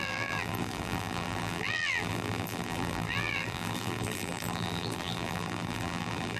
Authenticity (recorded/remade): remade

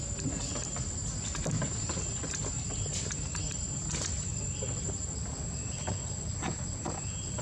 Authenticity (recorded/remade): recorded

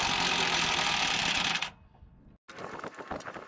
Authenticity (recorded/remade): recorded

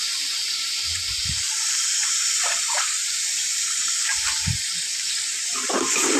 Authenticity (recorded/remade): remade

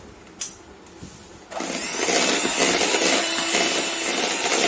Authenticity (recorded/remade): recorded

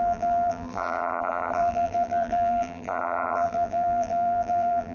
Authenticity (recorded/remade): remade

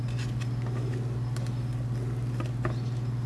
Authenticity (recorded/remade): recorded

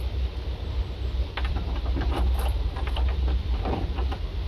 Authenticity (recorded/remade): remade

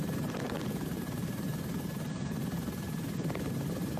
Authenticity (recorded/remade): remade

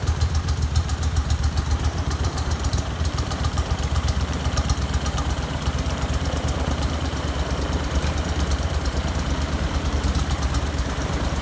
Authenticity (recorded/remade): remade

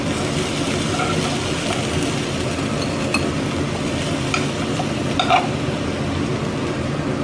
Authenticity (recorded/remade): recorded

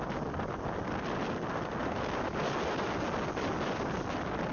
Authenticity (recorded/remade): recorded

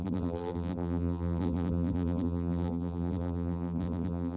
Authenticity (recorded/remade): remade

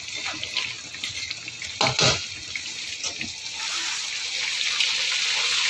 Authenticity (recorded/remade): recorded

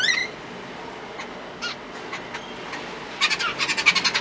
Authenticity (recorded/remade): recorded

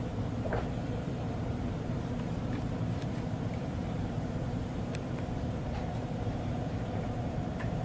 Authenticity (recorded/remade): remade